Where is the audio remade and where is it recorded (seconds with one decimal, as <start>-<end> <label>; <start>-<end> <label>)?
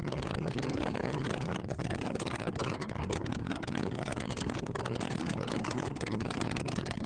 0.0-7.1 remade